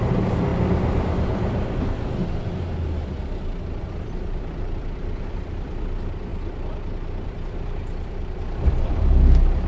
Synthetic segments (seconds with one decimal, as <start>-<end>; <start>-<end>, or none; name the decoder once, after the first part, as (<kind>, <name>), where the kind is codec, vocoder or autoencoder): 0.0-0.5 (vocoder, BigVGAN v2); 3.8-9.7

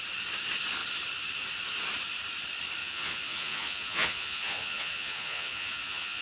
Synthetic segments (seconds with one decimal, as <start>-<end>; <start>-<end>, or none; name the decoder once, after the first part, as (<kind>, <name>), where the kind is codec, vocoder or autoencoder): 2.8-6.2 (vocoder, Vocos)

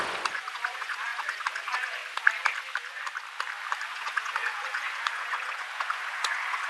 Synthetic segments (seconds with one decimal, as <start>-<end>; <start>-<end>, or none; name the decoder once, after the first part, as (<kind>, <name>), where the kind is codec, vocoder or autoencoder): 0.0-2.0 (vocoder, Vocos); 3.9-6.7

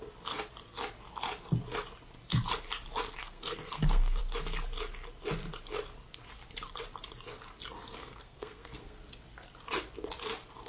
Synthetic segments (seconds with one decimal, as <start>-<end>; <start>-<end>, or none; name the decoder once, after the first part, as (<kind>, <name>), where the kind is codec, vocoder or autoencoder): 3.2-4.2 (codec, SNAC); 8.0-9.0

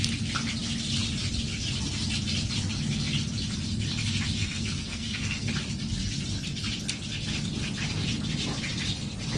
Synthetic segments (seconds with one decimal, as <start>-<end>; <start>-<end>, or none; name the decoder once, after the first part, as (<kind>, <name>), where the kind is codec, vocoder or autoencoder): 4.4-5.5 (codec, SNAC)